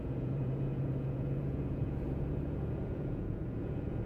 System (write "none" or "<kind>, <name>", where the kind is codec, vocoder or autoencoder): vocoder, Vocos